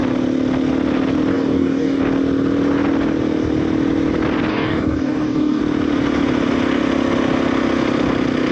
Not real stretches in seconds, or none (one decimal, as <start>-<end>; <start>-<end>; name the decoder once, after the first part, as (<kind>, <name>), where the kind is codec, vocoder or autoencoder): 1.3-2.0 (codec, DAC); 4.5-5.6